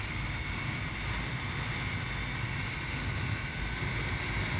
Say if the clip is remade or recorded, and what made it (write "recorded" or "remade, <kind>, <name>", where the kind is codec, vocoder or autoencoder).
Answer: recorded